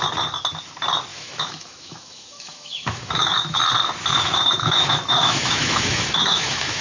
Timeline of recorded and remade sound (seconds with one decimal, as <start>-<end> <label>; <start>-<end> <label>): 0.0-1.1 recorded; 1.1-3.6 remade; 3.6-4.1 recorded; 4.1-6.8 remade